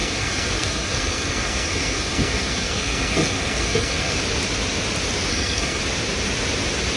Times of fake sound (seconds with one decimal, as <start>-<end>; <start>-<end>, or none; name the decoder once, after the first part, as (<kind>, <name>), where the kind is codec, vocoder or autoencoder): 0.0-4.2 (codec, SNAC); 5.3-5.8